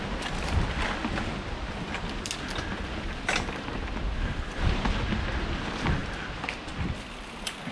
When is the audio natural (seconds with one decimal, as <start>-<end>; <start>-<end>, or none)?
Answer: 0.0-7.7

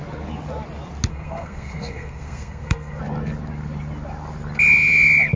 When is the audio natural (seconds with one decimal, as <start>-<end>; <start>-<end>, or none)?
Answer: 0.0-1.1; 3.0-5.4

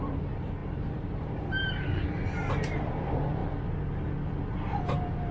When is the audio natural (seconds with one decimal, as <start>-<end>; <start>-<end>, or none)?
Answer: 2.0-2.9; 3.4-4.8

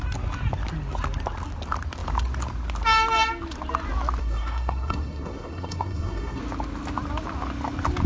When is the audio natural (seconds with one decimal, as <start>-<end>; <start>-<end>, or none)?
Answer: 0.0-4.2; 6.4-8.1

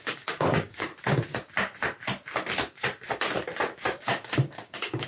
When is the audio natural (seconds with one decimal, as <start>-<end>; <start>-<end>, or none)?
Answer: 0.9-4.0

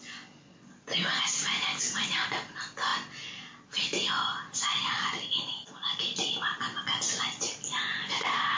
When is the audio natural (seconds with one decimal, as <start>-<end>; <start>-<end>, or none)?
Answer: 0.0-8.6